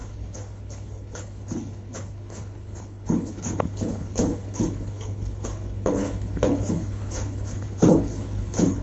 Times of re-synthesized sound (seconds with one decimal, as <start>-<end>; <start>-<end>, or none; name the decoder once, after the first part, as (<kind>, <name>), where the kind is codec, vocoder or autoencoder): 0.0-8.8 (codec, HILCodec)